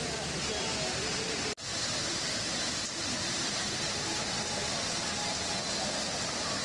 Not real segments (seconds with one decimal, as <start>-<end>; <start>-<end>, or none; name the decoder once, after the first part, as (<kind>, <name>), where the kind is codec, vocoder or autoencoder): 1.7-4.9 (vocoder, BigVGAN v2)